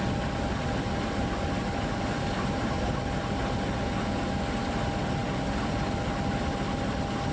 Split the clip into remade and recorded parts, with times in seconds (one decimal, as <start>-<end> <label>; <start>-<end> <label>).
0.0-7.3 recorded